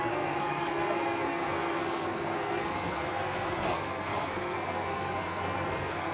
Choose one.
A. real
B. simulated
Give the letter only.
B